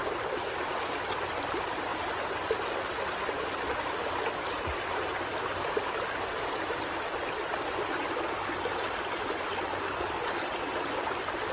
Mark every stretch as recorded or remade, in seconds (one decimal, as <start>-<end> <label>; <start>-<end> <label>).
0.0-0.8 remade; 0.8-11.5 recorded